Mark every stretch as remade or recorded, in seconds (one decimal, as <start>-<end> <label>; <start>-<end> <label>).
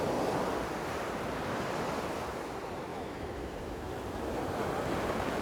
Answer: 0.0-2.9 recorded; 2.9-3.9 remade; 3.9-5.4 recorded